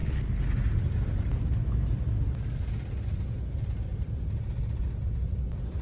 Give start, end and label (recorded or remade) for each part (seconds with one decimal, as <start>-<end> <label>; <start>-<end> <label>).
0.0-5.8 recorded